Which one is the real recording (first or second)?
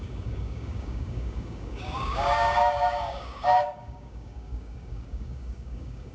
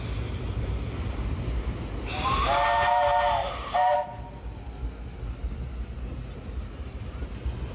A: second